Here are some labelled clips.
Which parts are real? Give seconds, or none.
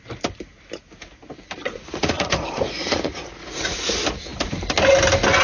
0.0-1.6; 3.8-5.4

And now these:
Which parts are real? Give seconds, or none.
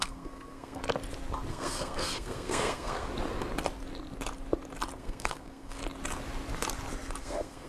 0.8-1.5; 3.1-5.0; 5.8-7.2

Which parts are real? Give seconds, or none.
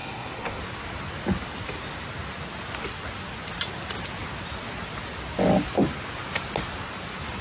0.6-7.4